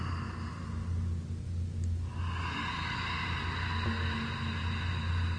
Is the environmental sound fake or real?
real